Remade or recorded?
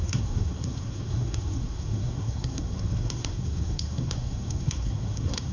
remade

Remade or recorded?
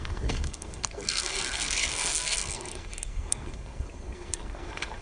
remade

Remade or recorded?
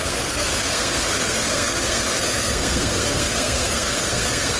remade